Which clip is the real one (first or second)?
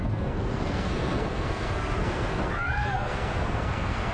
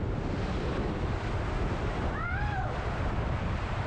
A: second